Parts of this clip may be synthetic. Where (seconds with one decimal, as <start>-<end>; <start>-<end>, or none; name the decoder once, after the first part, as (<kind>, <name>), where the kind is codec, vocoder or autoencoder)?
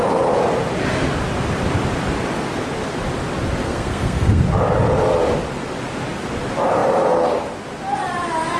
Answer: 3.6-4.4 (codec, SNAC)